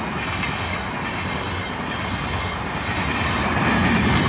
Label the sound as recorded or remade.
recorded